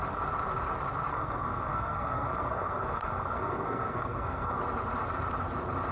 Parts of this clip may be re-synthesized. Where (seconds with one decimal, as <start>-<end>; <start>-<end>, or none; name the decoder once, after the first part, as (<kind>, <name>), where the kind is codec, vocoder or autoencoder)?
1.1-4.6 (codec, SNAC)